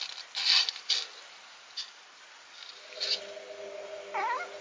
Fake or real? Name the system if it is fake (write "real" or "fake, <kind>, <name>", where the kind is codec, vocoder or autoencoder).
real